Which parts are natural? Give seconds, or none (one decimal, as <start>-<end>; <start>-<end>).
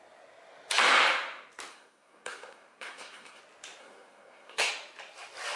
0.0-1.7; 3.4-3.8; 4.7-5.6